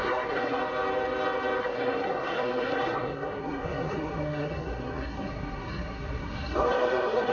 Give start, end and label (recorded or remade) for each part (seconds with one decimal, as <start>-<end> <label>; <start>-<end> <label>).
0.0-0.6 remade; 0.6-1.6 recorded; 1.6-7.3 remade